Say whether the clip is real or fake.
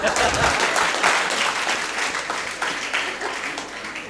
real